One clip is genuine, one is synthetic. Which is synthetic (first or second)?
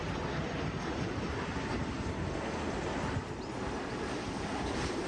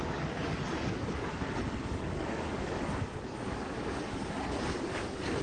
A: second